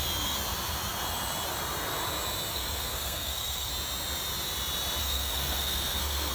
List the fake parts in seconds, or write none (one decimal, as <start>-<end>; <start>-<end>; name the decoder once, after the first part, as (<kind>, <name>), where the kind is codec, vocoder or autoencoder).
2.5-3.7 (codec, SNAC); 5.0-6.3